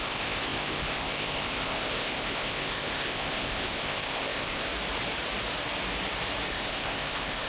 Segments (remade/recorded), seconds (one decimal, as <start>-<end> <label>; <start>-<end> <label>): 0.0-4.7 remade; 4.7-6.5 recorded; 6.5-7.5 remade